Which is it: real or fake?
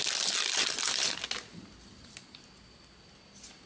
real